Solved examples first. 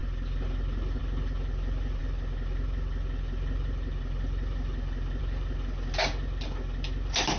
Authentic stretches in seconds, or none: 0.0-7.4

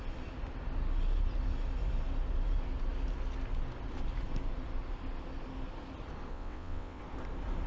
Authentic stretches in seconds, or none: 0.0-6.3; 7.0-7.7

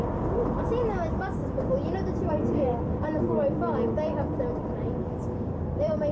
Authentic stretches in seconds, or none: 0.0-1.4; 3.3-4.6

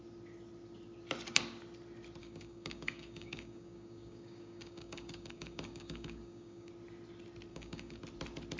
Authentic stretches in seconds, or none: 0.0-2.2; 6.7-7.5; 8.0-8.6

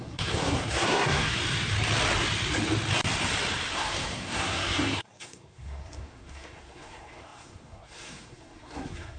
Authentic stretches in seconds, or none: 1.4-3.7

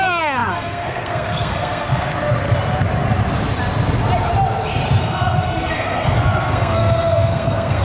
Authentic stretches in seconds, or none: 2.1-5.0

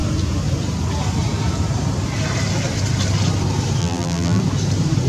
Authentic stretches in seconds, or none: 0.0-3.8; 4.4-5.1